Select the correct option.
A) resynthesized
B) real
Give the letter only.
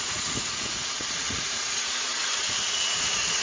A